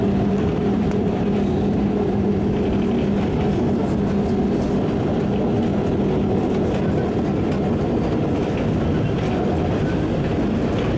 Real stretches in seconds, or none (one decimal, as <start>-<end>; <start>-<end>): 2.3-11.0